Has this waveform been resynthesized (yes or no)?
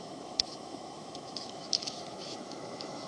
yes